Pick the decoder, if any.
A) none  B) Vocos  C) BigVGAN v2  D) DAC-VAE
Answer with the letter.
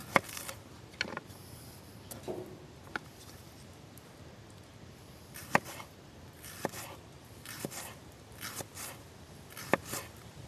C